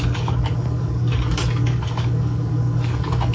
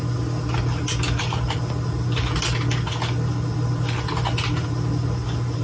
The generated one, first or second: first